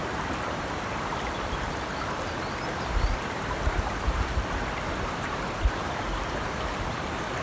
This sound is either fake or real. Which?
real